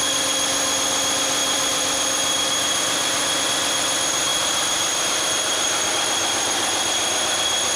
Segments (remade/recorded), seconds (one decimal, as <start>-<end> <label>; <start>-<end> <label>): 0.0-1.4 recorded; 1.4-3.4 remade; 3.4-4.3 recorded; 4.3-5.9 remade; 5.9-7.8 recorded